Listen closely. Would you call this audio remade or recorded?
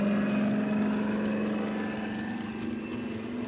recorded